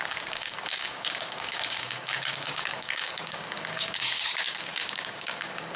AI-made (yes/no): yes